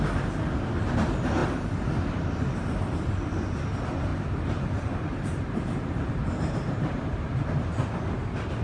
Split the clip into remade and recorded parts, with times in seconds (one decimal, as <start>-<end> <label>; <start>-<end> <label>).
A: 0.0-4.1 recorded; 4.1-7.4 remade; 7.4-8.6 recorded